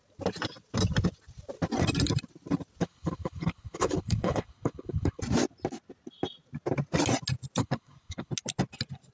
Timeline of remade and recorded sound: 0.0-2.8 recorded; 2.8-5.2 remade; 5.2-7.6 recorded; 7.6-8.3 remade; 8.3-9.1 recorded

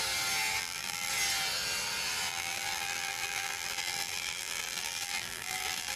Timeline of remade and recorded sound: 0.0-0.6 recorded; 0.6-1.1 remade; 1.1-2.3 recorded; 2.3-6.0 remade